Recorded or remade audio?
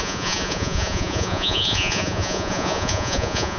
remade